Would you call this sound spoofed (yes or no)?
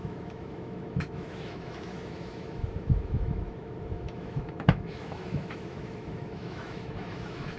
yes